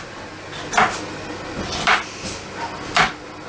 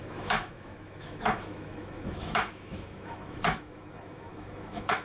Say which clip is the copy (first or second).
second